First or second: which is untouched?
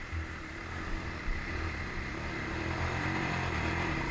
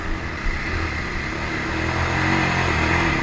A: second